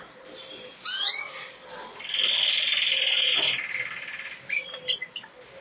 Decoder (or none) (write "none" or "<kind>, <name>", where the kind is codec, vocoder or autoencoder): none